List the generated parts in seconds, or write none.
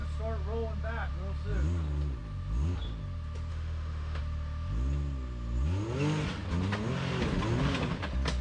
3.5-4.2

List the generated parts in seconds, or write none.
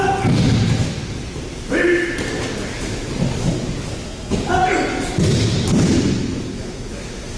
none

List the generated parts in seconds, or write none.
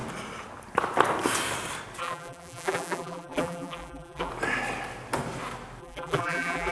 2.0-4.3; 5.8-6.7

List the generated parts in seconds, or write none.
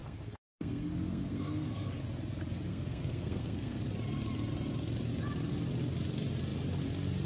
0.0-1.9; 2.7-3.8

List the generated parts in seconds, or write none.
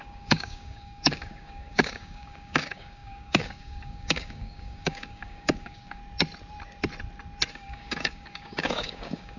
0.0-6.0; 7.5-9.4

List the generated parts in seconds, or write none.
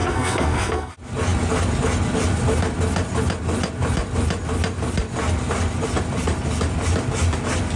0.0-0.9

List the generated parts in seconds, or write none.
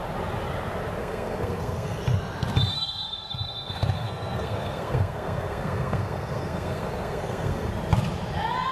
1.0-2.0; 2.7-7.7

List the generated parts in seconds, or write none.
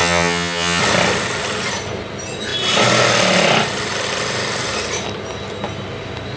0.0-0.8